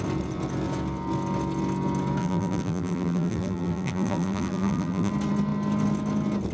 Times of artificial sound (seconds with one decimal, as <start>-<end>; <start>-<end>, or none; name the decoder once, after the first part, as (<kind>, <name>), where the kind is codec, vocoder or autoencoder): 2.2-5.1 (vocoder, BigVGAN v2)

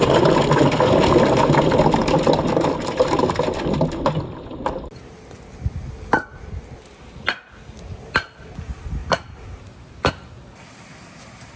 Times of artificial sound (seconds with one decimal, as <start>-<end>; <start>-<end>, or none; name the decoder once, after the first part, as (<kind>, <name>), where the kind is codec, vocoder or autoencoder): 9.0-10.1 (vocoder, BigVGAN v2)

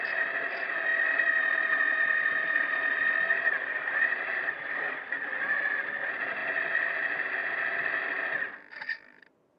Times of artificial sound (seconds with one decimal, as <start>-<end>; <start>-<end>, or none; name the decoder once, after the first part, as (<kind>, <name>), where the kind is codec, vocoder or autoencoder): 0.9-5.6 (vocoder, BigVGAN v2)

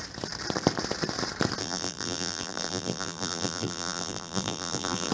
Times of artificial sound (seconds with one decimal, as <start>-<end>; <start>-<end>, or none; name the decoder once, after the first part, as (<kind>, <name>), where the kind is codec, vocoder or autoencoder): 1.6-5.1 (vocoder, BigVGAN v2)

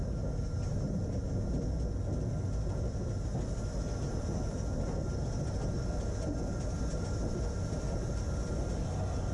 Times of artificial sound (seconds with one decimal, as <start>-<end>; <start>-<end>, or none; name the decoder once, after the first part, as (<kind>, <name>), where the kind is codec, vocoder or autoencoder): 0.7-1.3 (vocoder, BigVGAN v2)

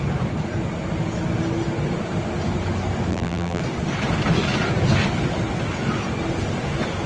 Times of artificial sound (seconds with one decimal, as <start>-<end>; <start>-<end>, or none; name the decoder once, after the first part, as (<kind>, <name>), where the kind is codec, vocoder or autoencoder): 3.1-3.6 (vocoder, BigVGAN v2)

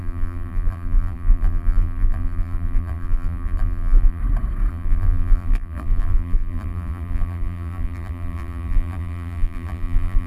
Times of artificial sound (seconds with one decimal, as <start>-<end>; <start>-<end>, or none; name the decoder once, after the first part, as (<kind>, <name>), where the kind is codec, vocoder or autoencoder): 0.0-4.2 (vocoder, BigVGAN v2); 4.7-10.3

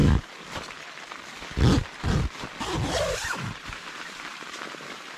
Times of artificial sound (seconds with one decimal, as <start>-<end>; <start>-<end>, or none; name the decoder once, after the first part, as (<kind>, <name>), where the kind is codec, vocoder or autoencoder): 3.1-5.2 (vocoder, BigVGAN v2)